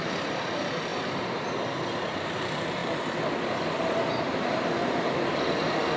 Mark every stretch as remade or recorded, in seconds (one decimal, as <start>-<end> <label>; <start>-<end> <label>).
0.0-2.8 remade; 2.8-3.8 recorded; 3.8-4.8 remade; 4.8-6.0 recorded